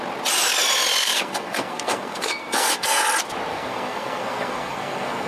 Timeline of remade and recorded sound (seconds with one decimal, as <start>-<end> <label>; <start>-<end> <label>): 0.0-1.0 recorded; 1.0-3.0 remade; 3.0-3.5 recorded; 3.5-5.3 remade